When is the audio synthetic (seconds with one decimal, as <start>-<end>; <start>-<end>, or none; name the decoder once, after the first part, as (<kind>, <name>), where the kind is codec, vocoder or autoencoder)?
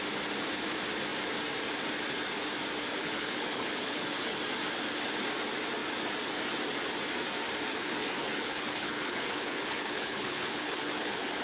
2.9-4.4 (codec, HILCodec); 7.7-11.4